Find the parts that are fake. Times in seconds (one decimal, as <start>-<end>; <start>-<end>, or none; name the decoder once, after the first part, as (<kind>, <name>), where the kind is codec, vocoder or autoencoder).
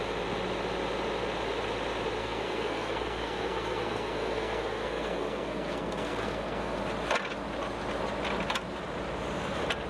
2.2-6.8 (codec, SNAC)